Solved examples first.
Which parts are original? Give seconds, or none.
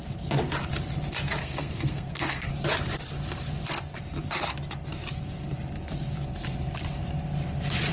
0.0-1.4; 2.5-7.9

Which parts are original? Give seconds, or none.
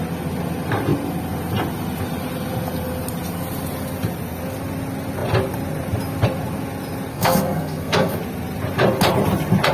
0.0-7.1; 8.2-9.7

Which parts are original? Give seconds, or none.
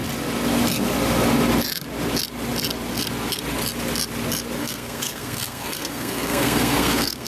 0.0-4.6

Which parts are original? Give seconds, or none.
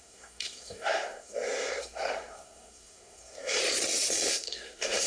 3.6-4.3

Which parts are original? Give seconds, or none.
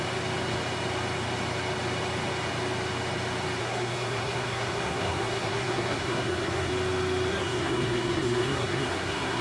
0.0-3.6; 6.7-7.3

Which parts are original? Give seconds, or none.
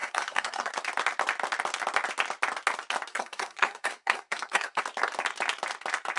0.7-3.1; 4.8-6.2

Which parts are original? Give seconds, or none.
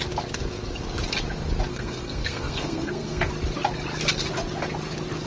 0.0-1.7; 3.3-5.3